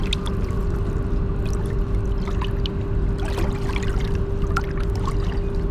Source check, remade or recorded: recorded